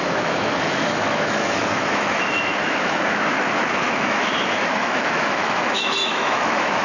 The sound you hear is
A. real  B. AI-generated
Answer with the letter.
B